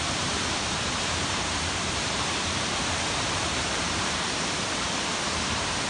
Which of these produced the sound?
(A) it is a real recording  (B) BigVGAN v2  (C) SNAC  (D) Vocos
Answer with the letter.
B